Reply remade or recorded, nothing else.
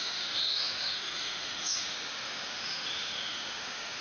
remade